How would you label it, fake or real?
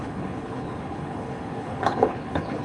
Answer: fake